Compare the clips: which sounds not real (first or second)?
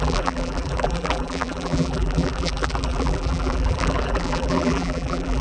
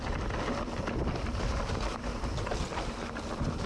first